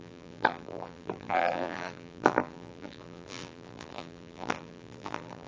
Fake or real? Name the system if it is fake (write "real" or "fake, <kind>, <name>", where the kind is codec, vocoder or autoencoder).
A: fake, vocoder, BigVGAN v2